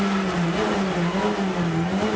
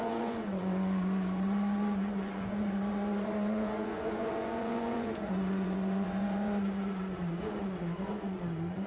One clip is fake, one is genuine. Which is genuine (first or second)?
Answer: first